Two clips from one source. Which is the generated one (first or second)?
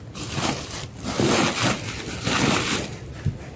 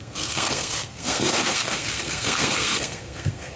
second